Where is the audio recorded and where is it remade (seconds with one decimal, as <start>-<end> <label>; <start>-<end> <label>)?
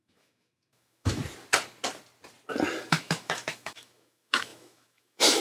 0.0-1.2 remade; 1.2-2.9 recorded; 2.9-5.4 remade